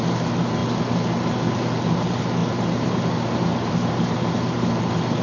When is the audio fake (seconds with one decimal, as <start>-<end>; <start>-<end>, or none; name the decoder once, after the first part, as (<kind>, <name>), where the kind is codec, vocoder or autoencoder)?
2.4-4.8 (vocoder, BigVGAN v2)